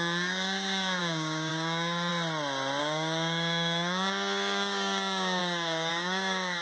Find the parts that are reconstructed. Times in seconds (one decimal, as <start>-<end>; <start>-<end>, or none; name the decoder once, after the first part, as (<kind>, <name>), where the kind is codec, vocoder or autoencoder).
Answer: 0.0-2.1 (codec, DAC); 2.8-6.6